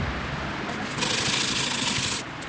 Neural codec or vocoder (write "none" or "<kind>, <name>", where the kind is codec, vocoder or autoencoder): none